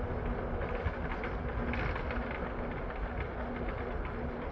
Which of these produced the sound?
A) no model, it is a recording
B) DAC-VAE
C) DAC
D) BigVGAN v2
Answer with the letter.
A